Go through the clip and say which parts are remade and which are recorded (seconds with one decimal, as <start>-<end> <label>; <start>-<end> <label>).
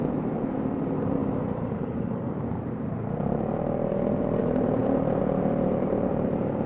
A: 0.0-6.7 remade